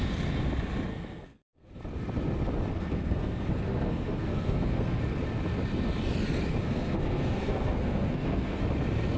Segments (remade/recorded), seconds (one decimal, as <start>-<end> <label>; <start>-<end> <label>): 0.0-0.9 recorded; 0.9-1.8 remade; 1.8-2.7 recorded; 2.7-5.0 remade; 5.0-6.6 recorded; 6.6-8.6 remade; 8.6-9.2 recorded